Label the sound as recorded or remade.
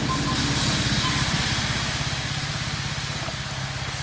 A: recorded